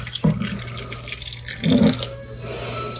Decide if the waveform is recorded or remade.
recorded